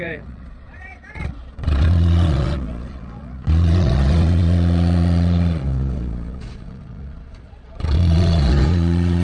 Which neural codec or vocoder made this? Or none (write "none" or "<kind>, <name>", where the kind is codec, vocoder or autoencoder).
vocoder, Vocos